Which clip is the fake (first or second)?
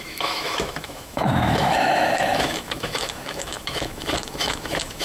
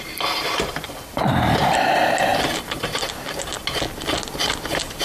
first